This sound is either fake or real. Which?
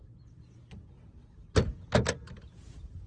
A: real